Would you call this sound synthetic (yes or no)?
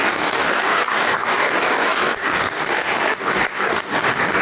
yes